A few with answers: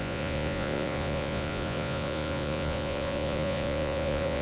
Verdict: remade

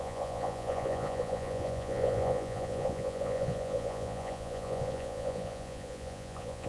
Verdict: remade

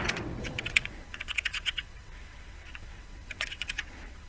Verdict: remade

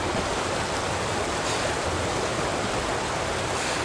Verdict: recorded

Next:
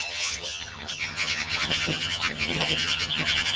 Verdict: remade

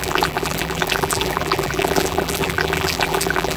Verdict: remade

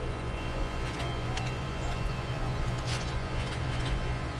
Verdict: remade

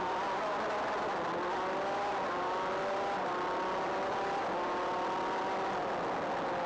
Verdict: recorded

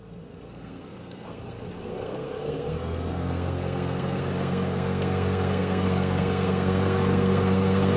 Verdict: remade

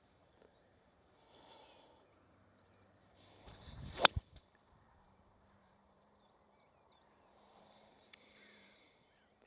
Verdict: remade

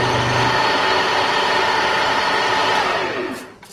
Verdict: recorded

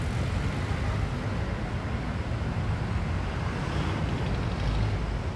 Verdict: recorded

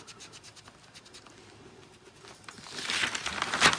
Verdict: recorded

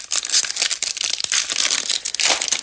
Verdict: recorded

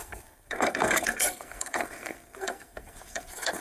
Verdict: remade